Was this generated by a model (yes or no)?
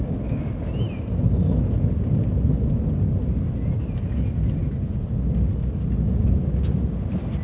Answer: no